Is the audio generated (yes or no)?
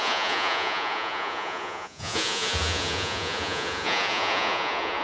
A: yes